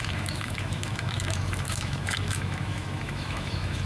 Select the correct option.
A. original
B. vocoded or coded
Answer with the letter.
B